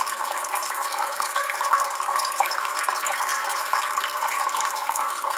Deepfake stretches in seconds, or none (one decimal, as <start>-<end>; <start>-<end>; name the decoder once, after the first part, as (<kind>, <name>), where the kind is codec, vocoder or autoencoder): 0.0-5.4 (codec, SNAC)